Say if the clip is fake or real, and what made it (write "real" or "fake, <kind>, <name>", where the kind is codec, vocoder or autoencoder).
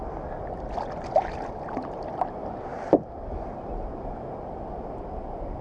real